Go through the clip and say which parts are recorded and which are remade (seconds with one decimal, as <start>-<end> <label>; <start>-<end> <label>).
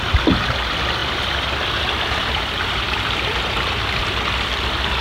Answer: 0.0-1.0 recorded; 1.0-4.0 remade; 4.0-5.0 recorded